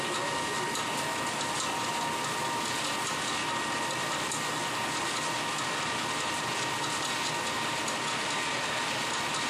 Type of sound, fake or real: real